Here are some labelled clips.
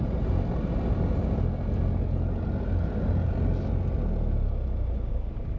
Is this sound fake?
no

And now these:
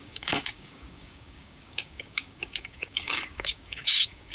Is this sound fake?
yes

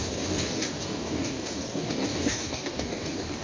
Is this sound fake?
yes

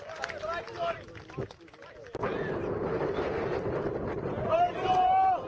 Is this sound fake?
no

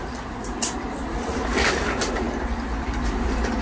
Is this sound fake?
no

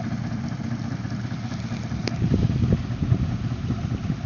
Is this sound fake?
no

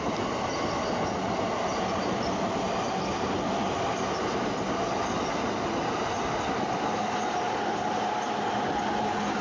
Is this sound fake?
no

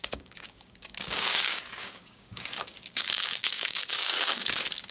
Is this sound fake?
yes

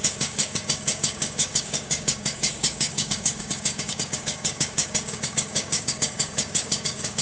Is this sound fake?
yes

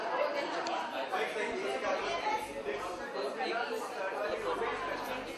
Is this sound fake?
no